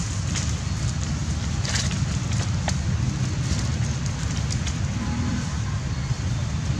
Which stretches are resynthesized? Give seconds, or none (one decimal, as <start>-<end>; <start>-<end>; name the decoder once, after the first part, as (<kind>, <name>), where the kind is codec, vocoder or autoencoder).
0.0-1.2 (vocoder, BigVGAN v2); 5.3-6.8